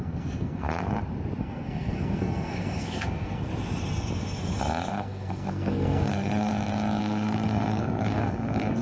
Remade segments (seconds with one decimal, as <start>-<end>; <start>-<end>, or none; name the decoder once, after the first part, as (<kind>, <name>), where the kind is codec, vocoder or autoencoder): 0.0-0.8 (codec, SNAC); 1.4-3.5; 4.9-6.5; 7.0-8.8